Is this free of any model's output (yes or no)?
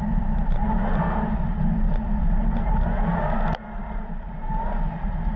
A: no